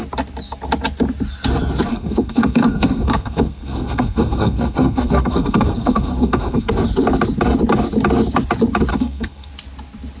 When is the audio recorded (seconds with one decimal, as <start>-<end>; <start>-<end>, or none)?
0.0-1.9; 6.7-8.9; 9.5-10.2